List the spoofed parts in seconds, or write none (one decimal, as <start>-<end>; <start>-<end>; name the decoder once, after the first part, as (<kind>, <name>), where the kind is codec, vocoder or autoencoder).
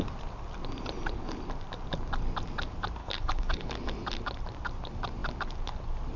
3.0-3.7 (codec, HILCodec)